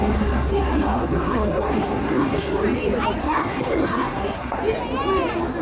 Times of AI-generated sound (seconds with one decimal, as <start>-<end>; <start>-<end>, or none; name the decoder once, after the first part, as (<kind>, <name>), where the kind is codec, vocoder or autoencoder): 0.0-2.6 (codec, SNAC); 3.2-4.6